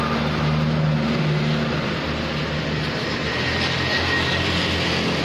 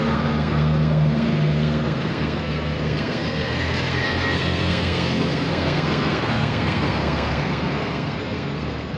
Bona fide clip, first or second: first